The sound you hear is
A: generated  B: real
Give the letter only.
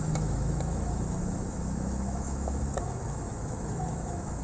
A